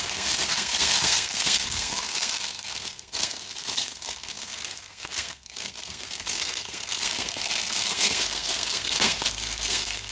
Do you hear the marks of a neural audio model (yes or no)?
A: yes